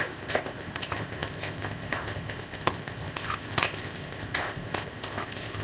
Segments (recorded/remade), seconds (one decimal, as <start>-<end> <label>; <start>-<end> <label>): 0.0-5.6 remade